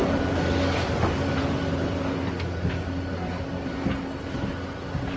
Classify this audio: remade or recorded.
recorded